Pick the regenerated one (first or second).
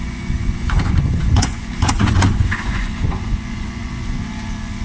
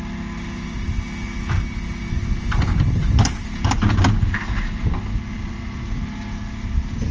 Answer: first